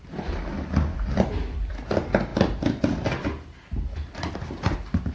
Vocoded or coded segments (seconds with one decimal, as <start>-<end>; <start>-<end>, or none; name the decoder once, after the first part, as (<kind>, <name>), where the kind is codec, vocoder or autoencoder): none

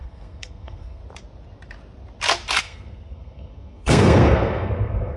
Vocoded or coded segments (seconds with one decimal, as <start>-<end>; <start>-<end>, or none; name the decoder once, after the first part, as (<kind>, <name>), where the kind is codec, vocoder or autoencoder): 0.0-1.0 (codec, SNAC); 2.6-5.2

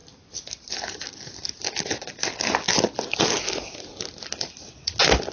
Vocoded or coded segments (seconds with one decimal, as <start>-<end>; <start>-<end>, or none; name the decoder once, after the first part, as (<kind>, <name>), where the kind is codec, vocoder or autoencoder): none

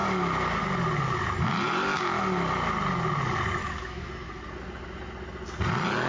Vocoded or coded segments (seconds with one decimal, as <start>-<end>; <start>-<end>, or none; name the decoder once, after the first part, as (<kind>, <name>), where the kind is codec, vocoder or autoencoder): 3.6-4.1 (autoencoder, DAC-VAE)

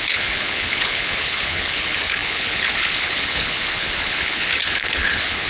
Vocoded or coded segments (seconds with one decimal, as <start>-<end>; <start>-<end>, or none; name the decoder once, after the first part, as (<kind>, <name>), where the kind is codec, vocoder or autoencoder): 0.0-5.5 (codec, HILCodec)